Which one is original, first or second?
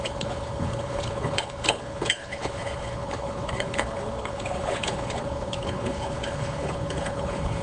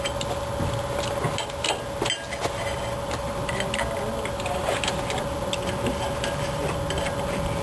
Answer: second